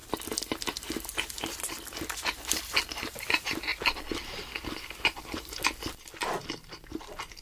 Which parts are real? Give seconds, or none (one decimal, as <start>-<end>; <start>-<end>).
0.0-2.6; 3.7-6.9